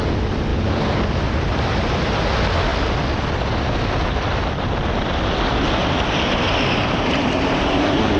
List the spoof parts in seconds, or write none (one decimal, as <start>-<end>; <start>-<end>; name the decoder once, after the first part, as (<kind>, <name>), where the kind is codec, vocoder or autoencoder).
0.5-2.3 (vocoder, BigVGAN v2); 5.8-8.2